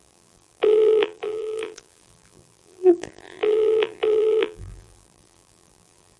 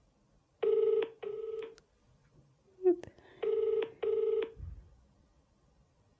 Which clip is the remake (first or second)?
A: first